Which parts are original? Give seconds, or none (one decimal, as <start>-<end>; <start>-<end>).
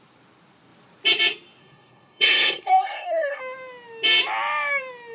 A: 0.0-1.6; 3.4-5.1